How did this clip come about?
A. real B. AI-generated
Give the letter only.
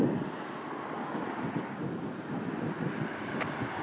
A